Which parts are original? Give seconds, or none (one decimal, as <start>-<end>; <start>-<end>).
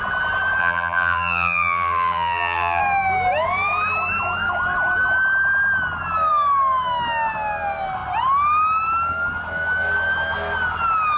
0.0-0.6; 2.8-11.2